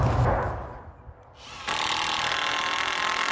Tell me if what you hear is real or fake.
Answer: real